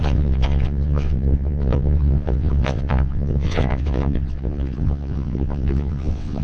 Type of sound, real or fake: fake